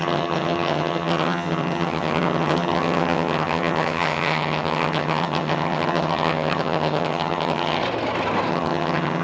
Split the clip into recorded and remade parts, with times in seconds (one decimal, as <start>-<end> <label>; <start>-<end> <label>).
0.0-7.8 remade; 7.8-8.5 recorded; 8.5-9.2 remade